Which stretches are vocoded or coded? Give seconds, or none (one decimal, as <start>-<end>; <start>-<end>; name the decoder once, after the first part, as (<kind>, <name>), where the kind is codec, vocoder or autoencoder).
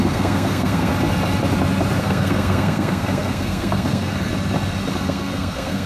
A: 0.0-0.9 (codec, SNAC); 2.0-4.3; 4.9-5.9